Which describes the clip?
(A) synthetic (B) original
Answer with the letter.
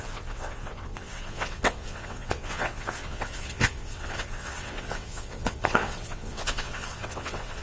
A